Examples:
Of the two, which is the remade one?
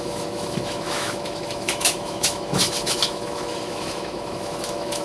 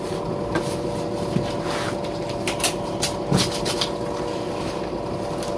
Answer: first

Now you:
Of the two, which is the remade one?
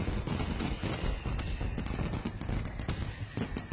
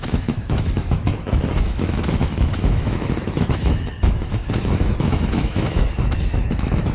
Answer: second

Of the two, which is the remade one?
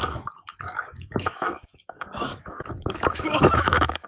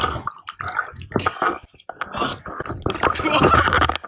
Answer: first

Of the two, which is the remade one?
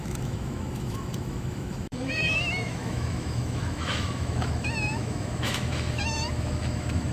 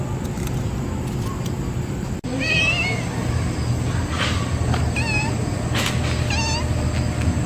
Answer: first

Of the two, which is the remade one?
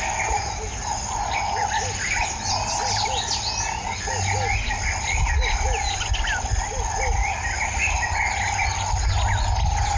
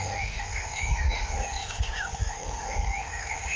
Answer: second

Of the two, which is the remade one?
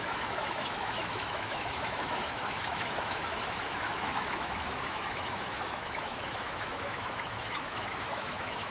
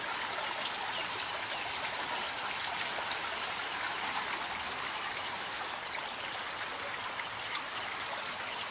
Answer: first